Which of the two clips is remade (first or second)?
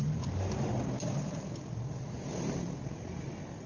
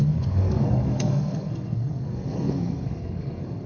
second